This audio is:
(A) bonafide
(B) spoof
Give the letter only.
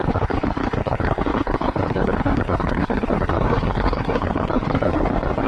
B